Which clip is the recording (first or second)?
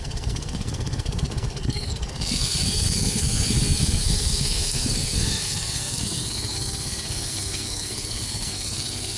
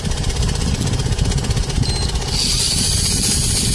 second